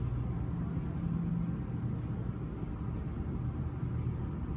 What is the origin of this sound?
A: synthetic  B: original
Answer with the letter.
B